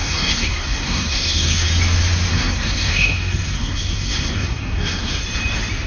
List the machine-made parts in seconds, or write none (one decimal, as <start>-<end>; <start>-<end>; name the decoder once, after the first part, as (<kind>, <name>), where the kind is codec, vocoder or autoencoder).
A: 0.0-1.7 (codec, SNAC); 2.3-5.2